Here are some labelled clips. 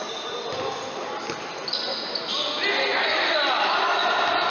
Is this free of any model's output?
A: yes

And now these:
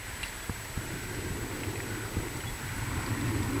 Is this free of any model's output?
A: yes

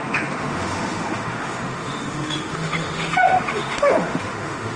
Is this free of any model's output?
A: no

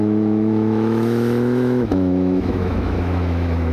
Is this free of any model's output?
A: no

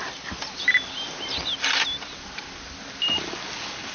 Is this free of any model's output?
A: yes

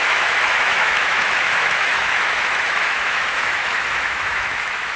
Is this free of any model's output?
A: no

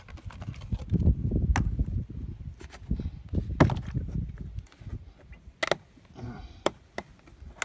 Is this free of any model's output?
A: yes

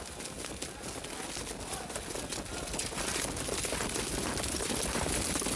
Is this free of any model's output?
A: yes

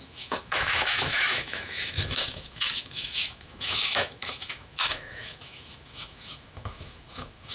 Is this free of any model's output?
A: no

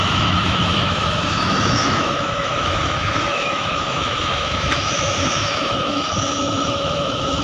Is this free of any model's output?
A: no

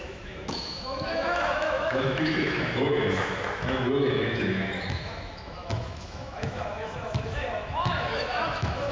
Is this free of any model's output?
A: no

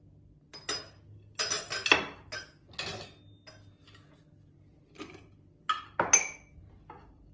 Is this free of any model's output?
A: yes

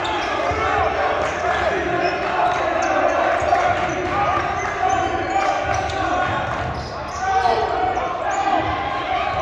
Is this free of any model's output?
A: yes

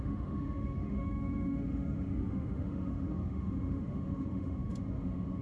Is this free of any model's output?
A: no